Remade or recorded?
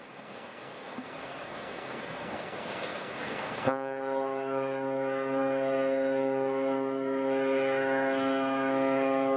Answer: remade